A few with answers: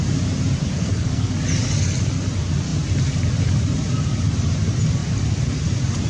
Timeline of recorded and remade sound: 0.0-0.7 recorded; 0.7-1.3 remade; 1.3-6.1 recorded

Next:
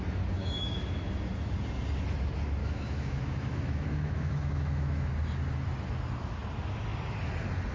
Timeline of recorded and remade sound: 0.0-0.4 recorded; 0.4-1.1 remade; 1.1-2.6 recorded; 2.6-5.1 remade; 5.1-7.7 recorded

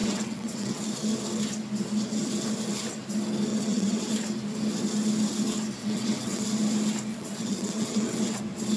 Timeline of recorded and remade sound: 0.0-0.8 remade; 0.8-3.5 recorded; 3.5-4.1 remade; 4.1-5.8 recorded; 5.8-6.4 remade; 6.4-7.1 recorded; 7.1-8.4 remade; 8.4-8.8 recorded

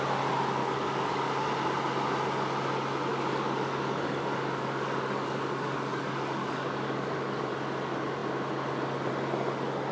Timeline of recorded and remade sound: 0.0-0.6 recorded; 0.6-1.3 remade; 1.3-3.1 recorded; 3.1-7.5 remade; 7.5-9.9 recorded

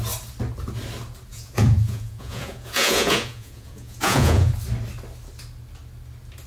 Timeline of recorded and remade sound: 0.0-1.3 recorded; 1.3-4.5 remade; 4.5-6.5 recorded

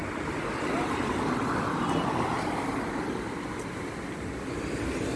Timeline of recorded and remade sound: 0.0-5.2 recorded

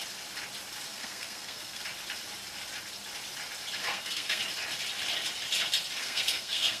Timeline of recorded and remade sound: 0.0-0.9 recorded; 0.9-1.8 remade; 1.8-3.8 recorded; 3.8-4.4 remade; 4.4-6.0 recorded; 6.0-6.8 remade